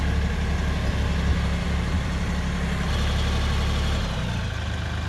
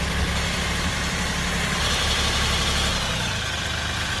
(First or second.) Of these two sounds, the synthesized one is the second